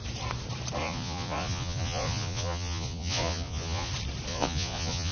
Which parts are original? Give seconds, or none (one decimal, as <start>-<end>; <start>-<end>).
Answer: 0.0-0.8; 3.9-4.3